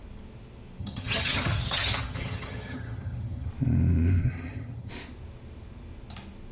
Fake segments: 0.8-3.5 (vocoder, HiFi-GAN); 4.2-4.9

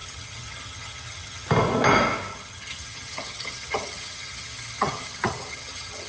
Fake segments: 0.0-1.5 (vocoder, HiFi-GAN); 2.3-6.1

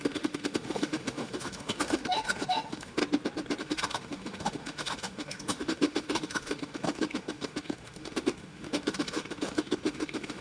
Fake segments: 0.0-3.0 (autoencoder, DAC-VAE); 3.6-10.4

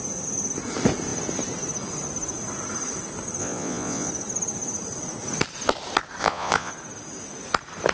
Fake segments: 3.4-4.1 (vocoder, Vocos); 6.2-6.7

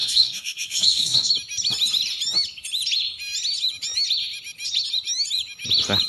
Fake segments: 0.0-1.3 (codec, DAC)

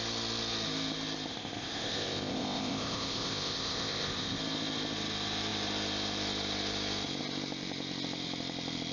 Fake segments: 1.3-4.4 (codec, ZipCodec)

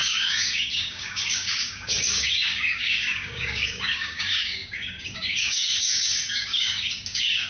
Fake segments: 0.0-7.5 (codec, DAC)

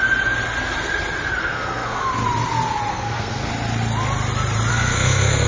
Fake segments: 1.4-2.1 (codec, SNAC); 2.9-3.5; 4.7-5.5